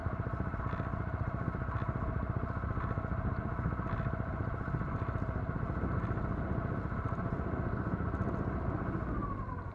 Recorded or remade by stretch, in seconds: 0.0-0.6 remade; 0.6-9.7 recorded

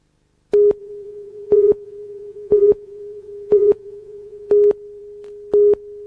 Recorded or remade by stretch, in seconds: 0.0-0.8 recorded; 0.8-4.5 remade; 4.5-6.1 recorded

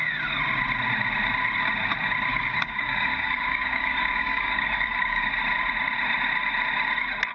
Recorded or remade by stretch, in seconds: 0.0-2.3 recorded; 2.3-5.3 remade; 5.3-7.3 recorded

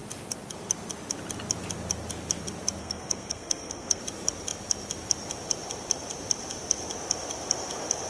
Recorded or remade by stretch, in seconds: 0.0-2.8 recorded; 2.8-4.0 remade; 4.0-8.1 recorded